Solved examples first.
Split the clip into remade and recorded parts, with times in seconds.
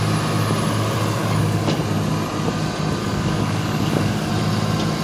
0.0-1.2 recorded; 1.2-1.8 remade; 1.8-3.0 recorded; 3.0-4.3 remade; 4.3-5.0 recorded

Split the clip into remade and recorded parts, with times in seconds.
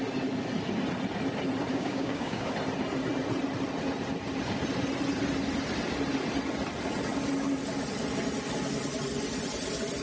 0.0-1.7 recorded; 1.7-2.5 remade; 2.5-10.0 recorded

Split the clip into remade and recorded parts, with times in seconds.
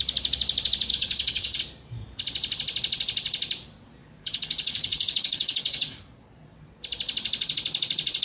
0.0-0.9 recorded; 0.9-1.6 remade; 1.6-4.0 recorded; 4.0-6.0 remade; 6.0-8.2 recorded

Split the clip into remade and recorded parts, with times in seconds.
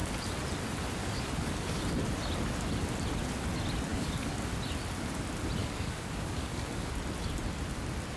0.0-1.0 recorded; 1.0-1.8 remade; 1.8-3.9 recorded; 3.9-4.5 remade; 4.5-5.6 recorded; 5.6-6.9 remade; 6.9-8.2 recorded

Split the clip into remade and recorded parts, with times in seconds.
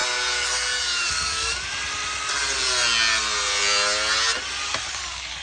0.0-1.1 recorded; 1.1-1.7 remade; 1.7-4.9 recorded; 4.9-5.4 remade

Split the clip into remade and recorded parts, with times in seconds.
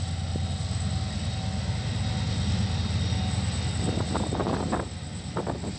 0.0-5.8 recorded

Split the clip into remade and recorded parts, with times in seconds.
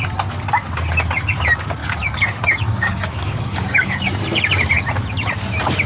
0.0-1.8 recorded; 1.8-4.0 remade; 4.0-5.9 recorded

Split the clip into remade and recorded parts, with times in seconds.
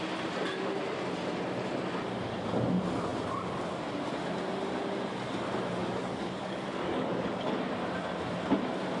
0.0-5.8 recorded; 5.8-7.5 remade; 7.5-9.0 recorded